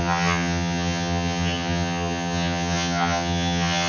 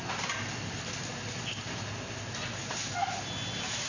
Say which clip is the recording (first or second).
second